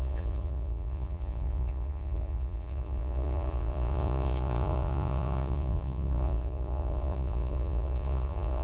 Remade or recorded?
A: remade